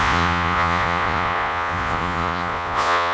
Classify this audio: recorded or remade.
remade